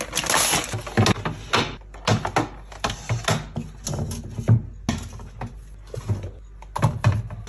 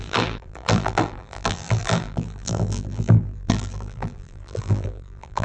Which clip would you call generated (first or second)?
second